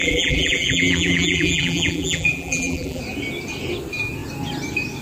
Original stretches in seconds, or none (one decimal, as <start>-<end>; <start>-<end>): 3.0-5.0